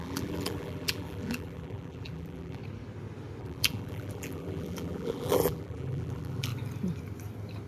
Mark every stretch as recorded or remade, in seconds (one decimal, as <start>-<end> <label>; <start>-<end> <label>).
0.0-2.6 remade; 2.6-3.4 recorded; 3.4-6.5 remade; 6.5-7.7 recorded